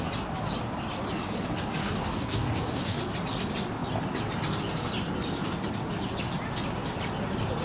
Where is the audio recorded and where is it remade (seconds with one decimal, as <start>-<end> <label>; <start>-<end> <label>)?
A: 0.0-1.8 recorded; 1.8-3.0 remade; 3.0-7.6 recorded